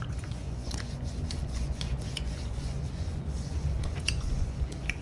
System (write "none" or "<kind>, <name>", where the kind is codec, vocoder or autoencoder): vocoder, Vocos